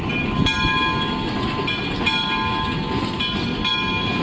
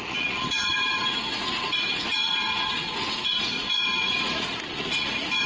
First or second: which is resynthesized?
second